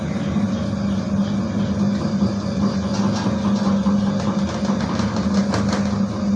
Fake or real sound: real